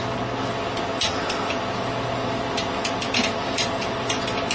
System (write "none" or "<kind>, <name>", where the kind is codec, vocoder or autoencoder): none